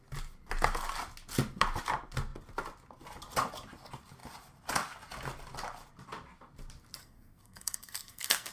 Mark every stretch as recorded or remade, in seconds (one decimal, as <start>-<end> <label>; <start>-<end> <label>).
0.0-7.0 recorded; 7.0-8.5 remade